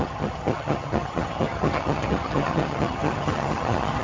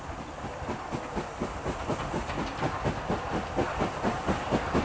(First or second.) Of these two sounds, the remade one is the first